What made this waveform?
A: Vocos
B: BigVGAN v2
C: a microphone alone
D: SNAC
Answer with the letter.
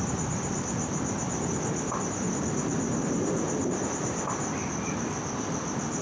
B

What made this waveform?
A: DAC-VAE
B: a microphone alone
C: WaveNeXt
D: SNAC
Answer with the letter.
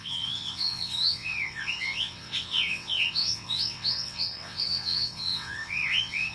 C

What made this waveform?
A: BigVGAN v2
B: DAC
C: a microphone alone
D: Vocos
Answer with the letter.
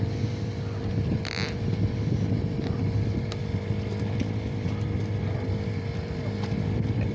A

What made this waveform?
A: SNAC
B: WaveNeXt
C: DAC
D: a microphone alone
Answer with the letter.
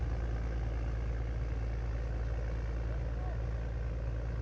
D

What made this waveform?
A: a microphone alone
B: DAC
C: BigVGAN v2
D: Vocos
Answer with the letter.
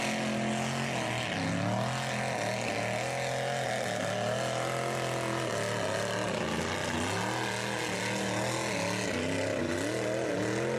A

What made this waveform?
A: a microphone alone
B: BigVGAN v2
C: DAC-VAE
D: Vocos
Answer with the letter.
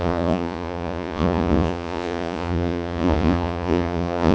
D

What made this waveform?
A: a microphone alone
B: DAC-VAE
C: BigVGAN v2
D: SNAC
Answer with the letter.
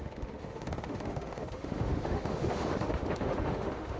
B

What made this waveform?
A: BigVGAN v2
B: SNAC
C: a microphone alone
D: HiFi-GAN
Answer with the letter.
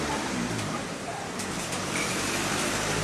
A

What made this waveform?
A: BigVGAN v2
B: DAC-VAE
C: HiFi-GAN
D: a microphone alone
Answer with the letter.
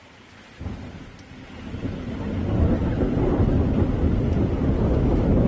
D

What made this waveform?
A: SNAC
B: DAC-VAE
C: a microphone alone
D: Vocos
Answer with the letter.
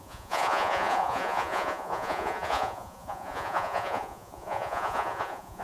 D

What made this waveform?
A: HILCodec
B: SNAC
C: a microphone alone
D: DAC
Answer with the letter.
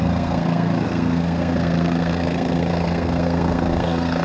B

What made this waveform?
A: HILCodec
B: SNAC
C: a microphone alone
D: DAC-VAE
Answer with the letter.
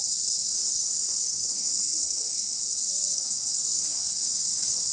B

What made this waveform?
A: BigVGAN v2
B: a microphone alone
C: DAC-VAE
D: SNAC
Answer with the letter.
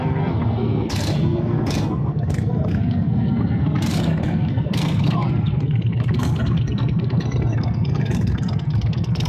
D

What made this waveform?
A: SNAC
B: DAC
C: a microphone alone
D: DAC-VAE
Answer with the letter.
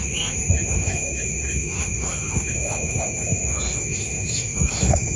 D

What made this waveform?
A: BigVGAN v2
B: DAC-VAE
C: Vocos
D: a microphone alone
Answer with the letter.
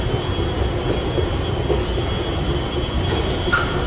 D